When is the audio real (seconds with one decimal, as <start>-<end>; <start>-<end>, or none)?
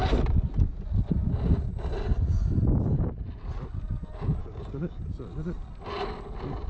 0.0-4.4; 5.0-6.7